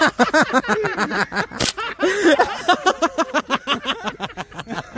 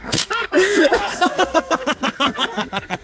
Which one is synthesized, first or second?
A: second